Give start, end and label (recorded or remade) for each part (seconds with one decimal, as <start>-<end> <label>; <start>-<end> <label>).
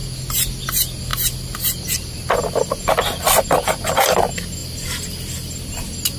0.0-6.2 recorded